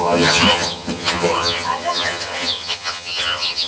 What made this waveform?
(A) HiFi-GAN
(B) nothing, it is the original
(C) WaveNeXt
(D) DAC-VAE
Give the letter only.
A